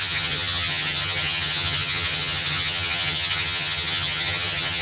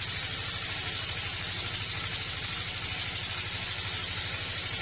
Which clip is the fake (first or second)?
first